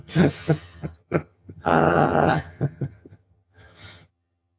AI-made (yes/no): yes